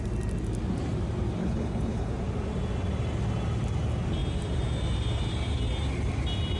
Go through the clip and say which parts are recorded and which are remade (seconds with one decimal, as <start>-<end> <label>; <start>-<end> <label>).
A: 0.0-1.4 recorded; 1.4-2.1 remade; 2.1-6.6 recorded